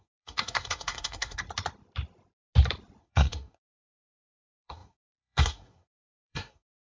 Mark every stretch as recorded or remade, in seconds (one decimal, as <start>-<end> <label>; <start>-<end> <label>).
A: 0.0-1.4 remade; 1.4-3.0 recorded; 3.0-6.9 remade